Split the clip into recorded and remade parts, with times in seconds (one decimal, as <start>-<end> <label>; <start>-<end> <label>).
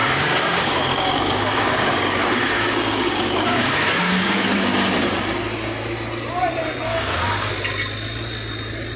0.0-4.9 remade; 4.9-6.9 recorded; 6.9-7.5 remade; 7.5-9.0 recorded